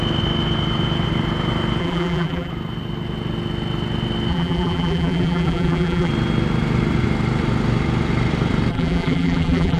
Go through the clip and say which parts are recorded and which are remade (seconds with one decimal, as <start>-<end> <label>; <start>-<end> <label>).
0.0-1.8 recorded; 1.8-2.5 remade; 2.5-4.3 recorded; 4.3-6.1 remade; 6.1-8.7 recorded; 8.7-9.8 remade